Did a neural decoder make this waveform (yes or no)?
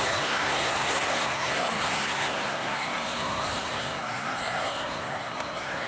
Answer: yes